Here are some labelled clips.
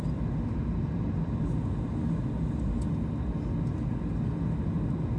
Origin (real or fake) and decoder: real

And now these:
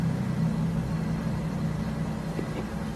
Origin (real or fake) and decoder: real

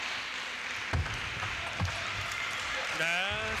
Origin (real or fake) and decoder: real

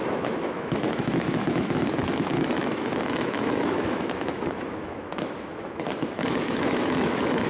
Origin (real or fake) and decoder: fake, autoencoder, DAC-VAE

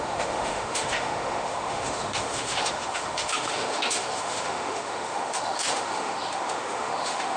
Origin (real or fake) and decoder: fake, autoencoder, DAC-VAE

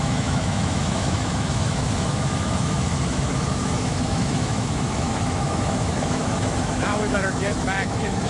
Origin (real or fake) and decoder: fake, autoencoder, DAC-VAE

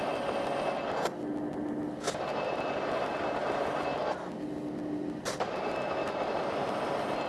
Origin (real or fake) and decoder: real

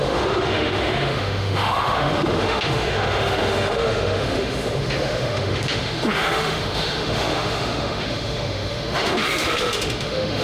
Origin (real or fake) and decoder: fake, autoencoder, DAC-VAE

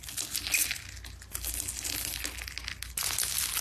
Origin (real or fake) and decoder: real